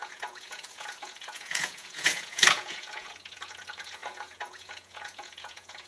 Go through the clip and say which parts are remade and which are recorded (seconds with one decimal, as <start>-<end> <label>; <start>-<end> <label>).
0.0-5.9 remade